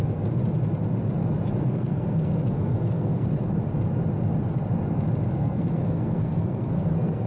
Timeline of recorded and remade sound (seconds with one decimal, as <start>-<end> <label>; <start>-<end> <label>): 0.0-0.4 remade; 0.4-1.6 recorded; 1.6-3.4 remade; 3.4-5.3 recorded; 5.3-7.3 remade